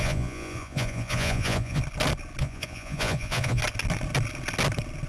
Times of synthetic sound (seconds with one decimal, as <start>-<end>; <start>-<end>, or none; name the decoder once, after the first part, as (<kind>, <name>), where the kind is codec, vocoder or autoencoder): 0.0-1.8 (vocoder, Vocos); 2.4-3.6